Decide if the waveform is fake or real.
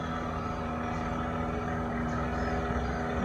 real